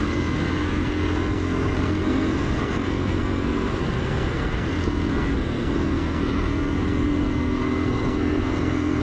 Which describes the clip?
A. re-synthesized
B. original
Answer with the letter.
A